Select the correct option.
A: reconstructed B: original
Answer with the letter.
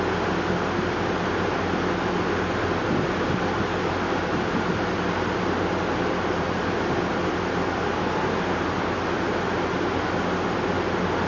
B